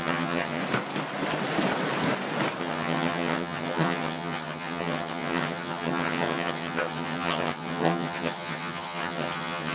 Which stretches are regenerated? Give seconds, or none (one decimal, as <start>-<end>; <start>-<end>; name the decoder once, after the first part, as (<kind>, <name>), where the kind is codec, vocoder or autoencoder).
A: 0.0-0.6 (vocoder, HiFi-GAN); 2.6-9.7